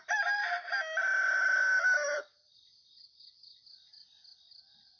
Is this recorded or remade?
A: recorded